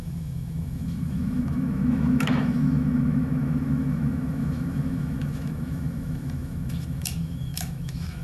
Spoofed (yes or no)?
yes